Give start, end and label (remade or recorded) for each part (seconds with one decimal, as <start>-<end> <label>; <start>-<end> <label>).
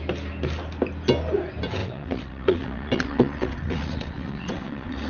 0.0-1.8 recorded; 1.8-5.1 remade